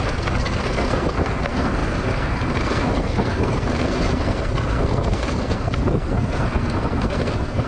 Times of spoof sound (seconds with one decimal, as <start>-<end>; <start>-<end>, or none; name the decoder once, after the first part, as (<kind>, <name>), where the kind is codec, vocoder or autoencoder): 0.0-7.7 (codec, SNAC)